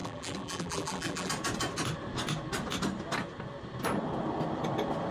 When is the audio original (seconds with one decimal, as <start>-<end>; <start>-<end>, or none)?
1.3-5.1